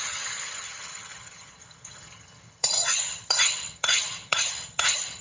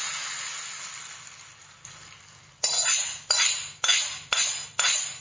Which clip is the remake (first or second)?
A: first